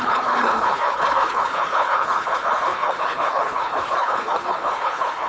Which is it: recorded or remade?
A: remade